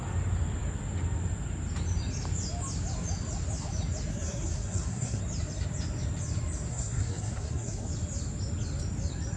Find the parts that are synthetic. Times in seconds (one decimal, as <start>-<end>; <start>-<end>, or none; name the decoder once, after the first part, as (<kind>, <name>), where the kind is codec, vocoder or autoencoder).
4.1-5.2 (codec, SNAC); 6.7-7.9